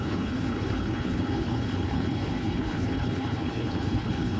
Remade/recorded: remade